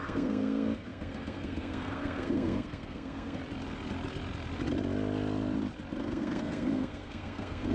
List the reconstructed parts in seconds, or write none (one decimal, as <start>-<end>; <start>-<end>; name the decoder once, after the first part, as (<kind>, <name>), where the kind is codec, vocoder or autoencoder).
0.0-3.4 (codec, SNAC); 6.0-7.7